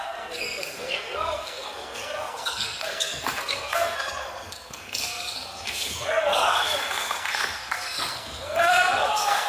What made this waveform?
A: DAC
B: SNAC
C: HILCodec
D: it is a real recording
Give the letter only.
B